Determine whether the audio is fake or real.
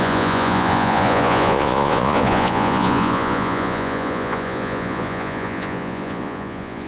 fake